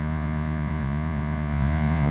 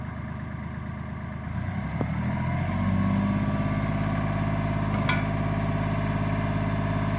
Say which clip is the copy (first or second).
first